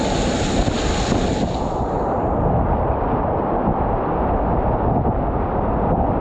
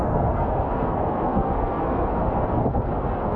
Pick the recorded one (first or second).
first